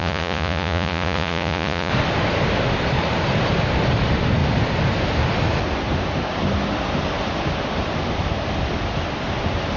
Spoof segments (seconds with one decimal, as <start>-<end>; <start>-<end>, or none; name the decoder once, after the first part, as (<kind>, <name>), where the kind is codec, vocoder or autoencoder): 0.0-1.9 (vocoder, Vocos)